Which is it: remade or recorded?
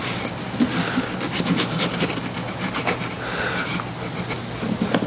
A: recorded